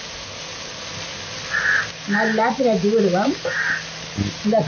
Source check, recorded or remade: recorded